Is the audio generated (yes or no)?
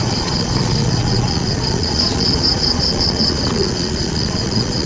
yes